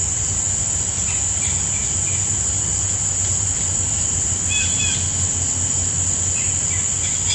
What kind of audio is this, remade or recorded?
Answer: recorded